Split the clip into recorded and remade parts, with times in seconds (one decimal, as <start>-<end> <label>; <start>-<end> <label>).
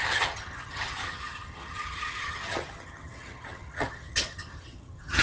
0.0-5.2 remade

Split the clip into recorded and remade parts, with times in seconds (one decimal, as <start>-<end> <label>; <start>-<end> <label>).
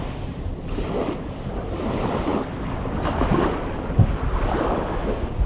0.0-5.5 recorded